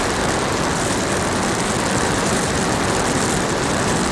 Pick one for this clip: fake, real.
fake